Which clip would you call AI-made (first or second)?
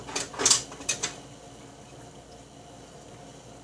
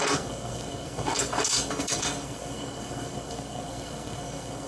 second